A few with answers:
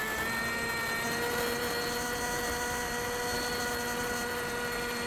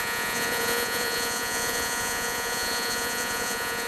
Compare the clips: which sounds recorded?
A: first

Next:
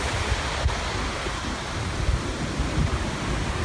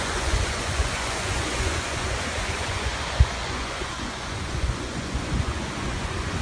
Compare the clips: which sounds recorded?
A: first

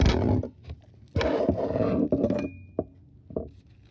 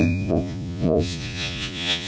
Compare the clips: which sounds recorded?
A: first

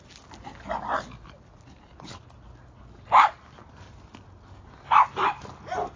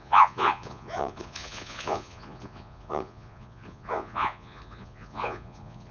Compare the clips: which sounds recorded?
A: first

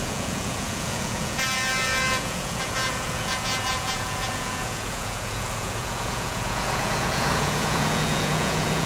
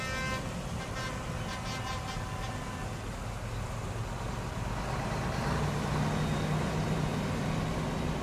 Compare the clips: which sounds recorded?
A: second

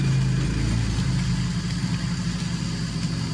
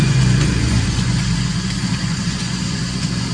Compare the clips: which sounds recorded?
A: first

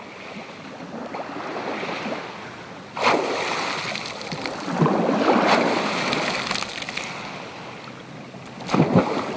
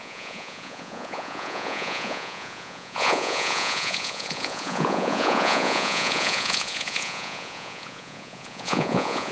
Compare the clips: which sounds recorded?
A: first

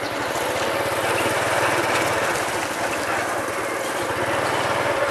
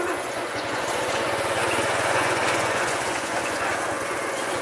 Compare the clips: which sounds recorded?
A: first